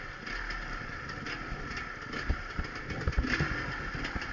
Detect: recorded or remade recorded